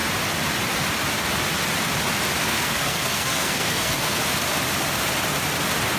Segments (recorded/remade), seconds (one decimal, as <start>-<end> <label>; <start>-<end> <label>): 0.0-2.4 recorded; 2.4-4.2 remade; 4.2-6.0 recorded